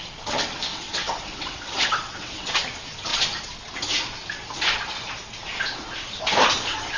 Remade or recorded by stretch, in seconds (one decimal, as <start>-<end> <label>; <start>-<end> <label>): 0.0-0.7 recorded; 0.7-2.5 remade; 2.5-7.0 recorded